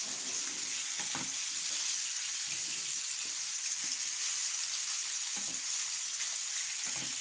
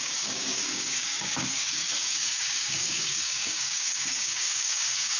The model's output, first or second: second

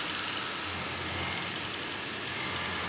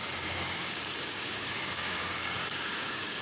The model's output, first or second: second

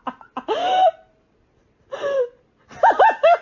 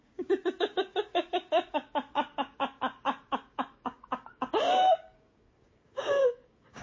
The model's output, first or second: second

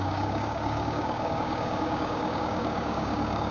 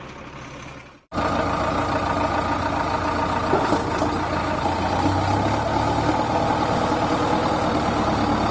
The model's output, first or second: first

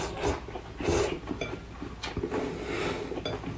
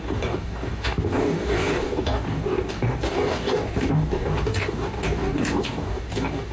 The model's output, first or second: second